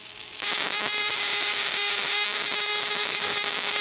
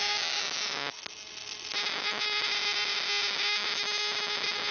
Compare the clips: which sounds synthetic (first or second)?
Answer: first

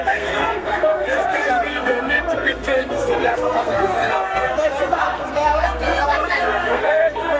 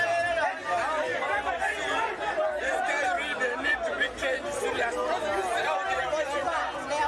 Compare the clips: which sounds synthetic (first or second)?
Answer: first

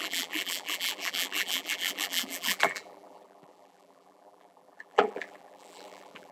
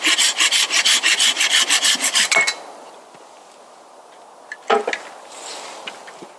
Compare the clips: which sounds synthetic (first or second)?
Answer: first